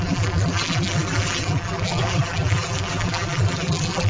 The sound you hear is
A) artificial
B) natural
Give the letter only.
A